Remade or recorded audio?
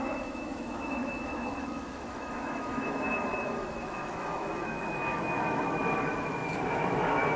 remade